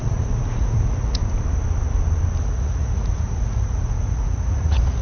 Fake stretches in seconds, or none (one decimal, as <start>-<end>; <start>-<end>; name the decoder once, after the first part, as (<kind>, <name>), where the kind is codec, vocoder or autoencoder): 0.0-1.2 (vocoder, Vocos); 2.4-5.0